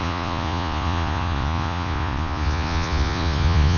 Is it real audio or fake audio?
fake